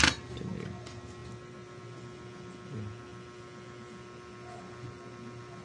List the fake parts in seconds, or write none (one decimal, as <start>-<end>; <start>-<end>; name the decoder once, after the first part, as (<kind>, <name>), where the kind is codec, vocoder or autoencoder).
none

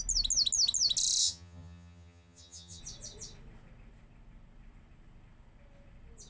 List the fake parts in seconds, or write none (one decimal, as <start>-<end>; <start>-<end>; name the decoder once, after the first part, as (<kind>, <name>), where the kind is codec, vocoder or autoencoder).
1.2-2.8 (vocoder, HiFi-GAN)